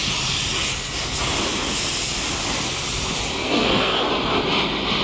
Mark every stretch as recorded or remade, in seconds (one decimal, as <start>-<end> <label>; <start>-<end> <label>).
0.0-3.4 recorded; 3.4-4.0 remade; 4.0-5.0 recorded